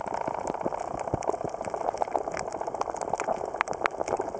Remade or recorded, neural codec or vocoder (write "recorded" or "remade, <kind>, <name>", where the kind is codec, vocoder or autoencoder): recorded